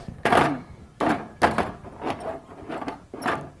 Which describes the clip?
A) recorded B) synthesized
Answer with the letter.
A